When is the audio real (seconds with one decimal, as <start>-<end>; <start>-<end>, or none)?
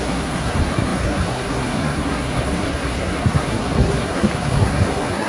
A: none